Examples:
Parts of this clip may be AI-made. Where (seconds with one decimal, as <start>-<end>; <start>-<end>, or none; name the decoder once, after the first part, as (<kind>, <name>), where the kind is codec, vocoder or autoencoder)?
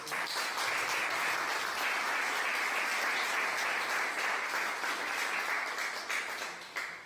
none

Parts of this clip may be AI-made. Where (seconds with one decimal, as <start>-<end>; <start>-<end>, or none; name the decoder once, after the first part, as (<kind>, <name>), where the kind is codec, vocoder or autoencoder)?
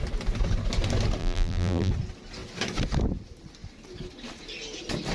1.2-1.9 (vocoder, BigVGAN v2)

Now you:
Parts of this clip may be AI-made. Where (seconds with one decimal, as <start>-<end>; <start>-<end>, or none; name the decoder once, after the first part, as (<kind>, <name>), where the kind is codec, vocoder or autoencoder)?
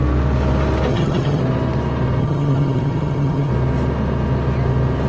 0.9-1.4 (vocoder, HiFi-GAN); 2.2-3.5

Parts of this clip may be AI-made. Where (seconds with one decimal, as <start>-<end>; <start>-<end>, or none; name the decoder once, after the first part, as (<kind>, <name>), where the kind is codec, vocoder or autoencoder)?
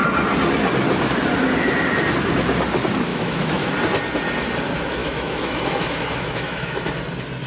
3.1-3.7 (autoencoder, DAC-VAE); 5.0-6.9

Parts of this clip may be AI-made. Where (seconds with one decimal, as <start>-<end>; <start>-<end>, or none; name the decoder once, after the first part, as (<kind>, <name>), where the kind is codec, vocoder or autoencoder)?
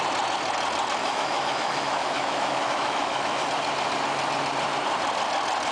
1.0-3.4 (autoencoder, DAC-VAE)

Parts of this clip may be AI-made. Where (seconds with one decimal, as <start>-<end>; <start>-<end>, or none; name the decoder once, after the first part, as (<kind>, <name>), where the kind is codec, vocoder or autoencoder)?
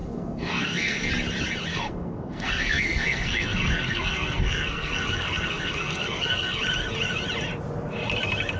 0.0-1.1 (codec, SNAC); 1.7-6.6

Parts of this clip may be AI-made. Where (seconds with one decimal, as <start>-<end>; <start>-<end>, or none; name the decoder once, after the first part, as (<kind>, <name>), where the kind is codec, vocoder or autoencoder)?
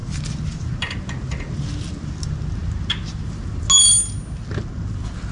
none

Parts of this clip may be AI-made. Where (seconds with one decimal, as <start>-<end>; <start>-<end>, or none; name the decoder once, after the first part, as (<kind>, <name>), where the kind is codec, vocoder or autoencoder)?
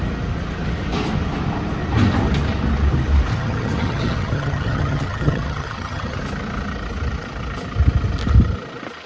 3.3-6.2 (vocoder, HiFi-GAN)